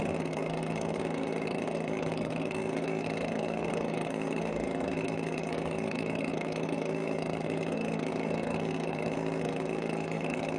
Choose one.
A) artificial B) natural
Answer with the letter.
A